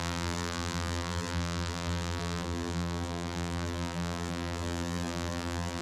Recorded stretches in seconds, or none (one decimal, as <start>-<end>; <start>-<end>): none